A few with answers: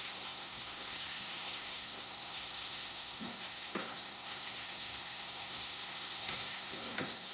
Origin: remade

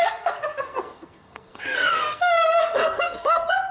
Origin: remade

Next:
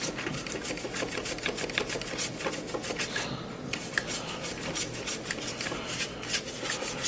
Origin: recorded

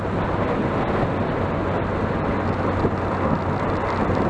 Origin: recorded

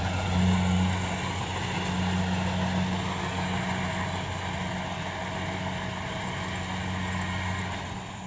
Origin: recorded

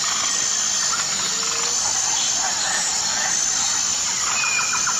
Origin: recorded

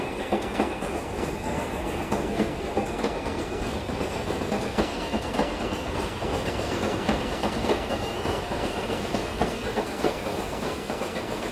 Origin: remade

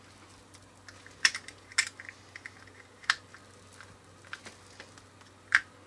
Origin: recorded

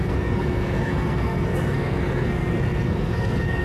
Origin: remade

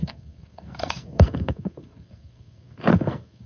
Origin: remade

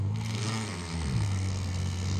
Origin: remade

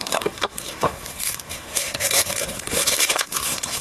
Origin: remade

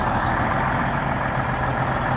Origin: recorded